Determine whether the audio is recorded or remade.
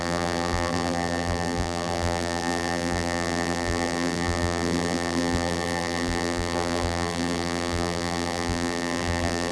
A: remade